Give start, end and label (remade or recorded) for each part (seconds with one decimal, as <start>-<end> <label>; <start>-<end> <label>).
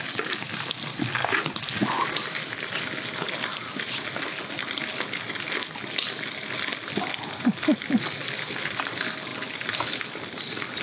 0.0-10.8 recorded